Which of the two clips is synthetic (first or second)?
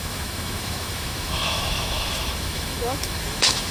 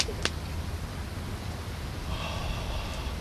first